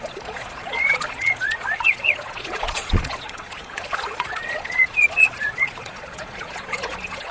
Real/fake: fake